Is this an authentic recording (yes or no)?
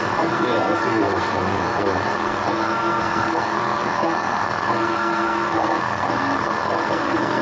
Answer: no